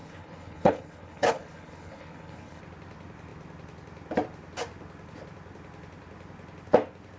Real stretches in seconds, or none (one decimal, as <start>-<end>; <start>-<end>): 2.6-7.2

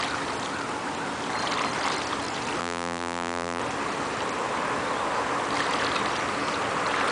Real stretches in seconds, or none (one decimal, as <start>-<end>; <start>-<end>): 0.0-2.6; 3.6-7.1

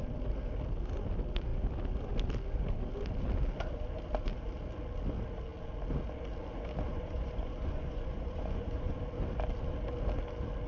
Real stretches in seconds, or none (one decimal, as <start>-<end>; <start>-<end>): 0.0-6.9; 9.0-10.7

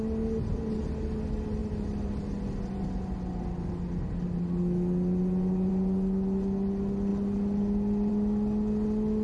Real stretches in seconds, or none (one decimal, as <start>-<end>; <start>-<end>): 0.0-9.2

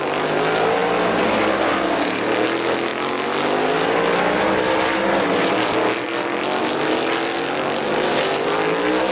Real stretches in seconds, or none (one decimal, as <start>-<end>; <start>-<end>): 0.0-9.1

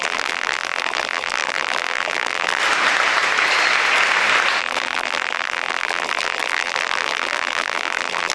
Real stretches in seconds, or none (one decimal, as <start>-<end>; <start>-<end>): 2.6-4.6